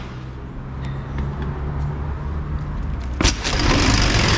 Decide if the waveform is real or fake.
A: real